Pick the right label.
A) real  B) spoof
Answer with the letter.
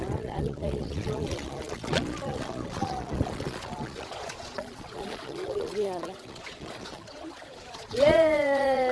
B